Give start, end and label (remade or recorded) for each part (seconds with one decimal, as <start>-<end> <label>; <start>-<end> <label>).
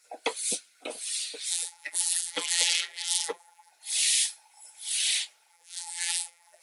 0.0-1.5 recorded; 1.5-3.7 remade; 3.7-5.5 recorded; 5.5-6.6 remade